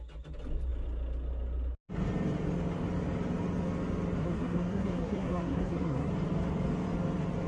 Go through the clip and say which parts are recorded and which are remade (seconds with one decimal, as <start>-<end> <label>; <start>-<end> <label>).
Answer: 0.0-4.2 recorded; 4.2-6.1 remade; 6.1-7.5 recorded